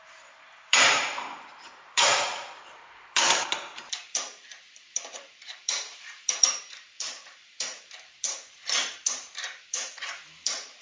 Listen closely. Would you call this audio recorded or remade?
remade